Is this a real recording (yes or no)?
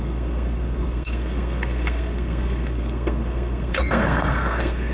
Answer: no